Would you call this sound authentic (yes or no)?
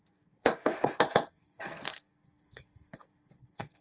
no